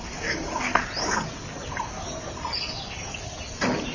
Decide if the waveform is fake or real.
real